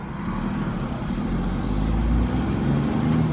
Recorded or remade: recorded